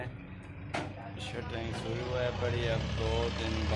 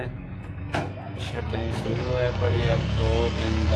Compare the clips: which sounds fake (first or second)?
second